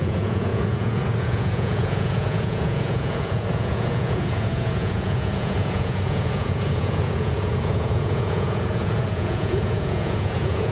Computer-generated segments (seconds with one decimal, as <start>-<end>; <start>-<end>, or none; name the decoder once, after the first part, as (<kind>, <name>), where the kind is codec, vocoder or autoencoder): 0.0-10.7 (vocoder, Vocos)